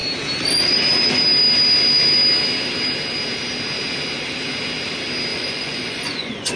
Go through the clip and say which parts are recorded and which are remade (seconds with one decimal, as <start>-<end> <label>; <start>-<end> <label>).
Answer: 0.0-5.3 recorded; 5.3-6.6 remade